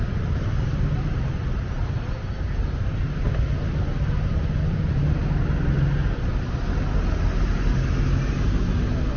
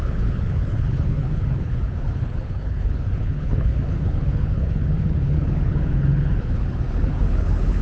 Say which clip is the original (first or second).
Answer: first